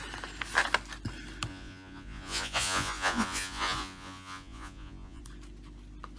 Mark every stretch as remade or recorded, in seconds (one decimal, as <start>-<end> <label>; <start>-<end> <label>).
0.0-1.5 recorded; 1.5-5.2 remade; 5.2-6.2 recorded

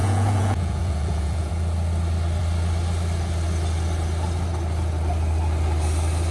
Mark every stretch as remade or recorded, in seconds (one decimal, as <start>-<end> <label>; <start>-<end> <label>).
0.0-1.5 remade; 1.5-6.3 recorded